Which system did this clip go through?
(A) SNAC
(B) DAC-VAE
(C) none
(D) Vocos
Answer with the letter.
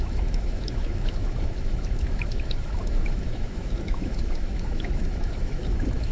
B